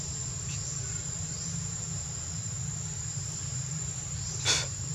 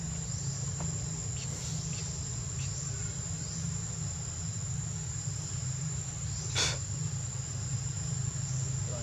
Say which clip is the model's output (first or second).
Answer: first